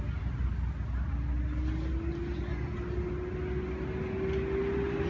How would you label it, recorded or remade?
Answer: recorded